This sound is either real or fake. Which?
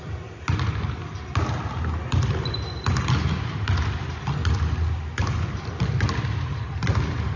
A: real